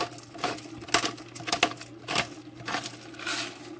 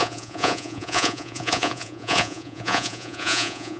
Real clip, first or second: first